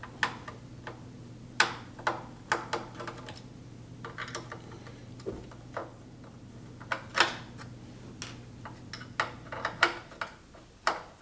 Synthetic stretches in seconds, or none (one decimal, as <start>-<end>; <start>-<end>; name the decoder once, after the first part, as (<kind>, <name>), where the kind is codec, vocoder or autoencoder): none